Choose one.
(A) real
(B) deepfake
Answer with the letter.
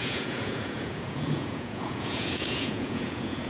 B